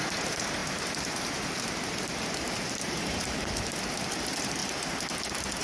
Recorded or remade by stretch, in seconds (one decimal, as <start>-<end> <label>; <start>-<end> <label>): 0.0-4.6 remade; 4.6-5.6 recorded